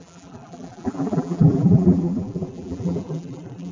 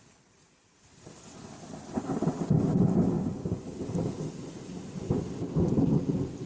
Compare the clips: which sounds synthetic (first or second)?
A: first